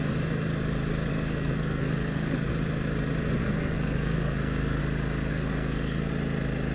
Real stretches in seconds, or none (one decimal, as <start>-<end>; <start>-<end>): 0.0-1.1; 2.5-3.4; 4.8-5.3; 6.1-6.7